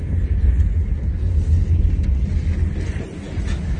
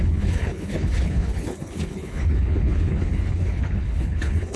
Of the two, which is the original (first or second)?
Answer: first